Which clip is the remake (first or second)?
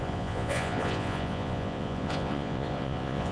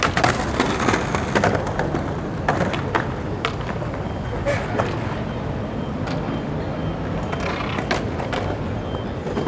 first